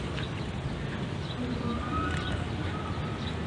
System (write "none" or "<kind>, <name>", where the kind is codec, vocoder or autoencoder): none